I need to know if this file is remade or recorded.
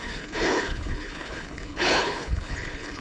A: remade